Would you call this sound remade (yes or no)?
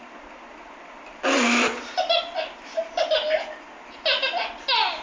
no